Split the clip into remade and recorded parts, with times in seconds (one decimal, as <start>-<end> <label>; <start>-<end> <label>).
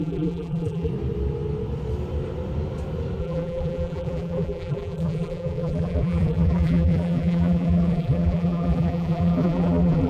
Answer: 0.0-0.9 remade; 0.9-3.2 recorded; 3.2-10.1 remade